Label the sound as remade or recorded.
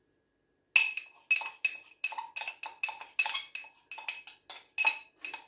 recorded